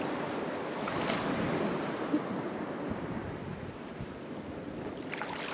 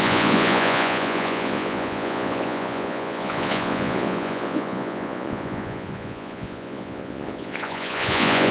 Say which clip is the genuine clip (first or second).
first